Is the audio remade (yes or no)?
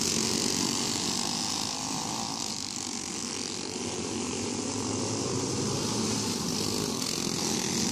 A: no